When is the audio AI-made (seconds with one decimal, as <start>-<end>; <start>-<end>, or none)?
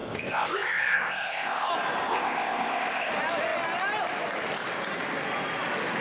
0.0-1.7; 2.1-3.1